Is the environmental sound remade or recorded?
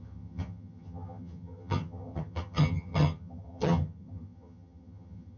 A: remade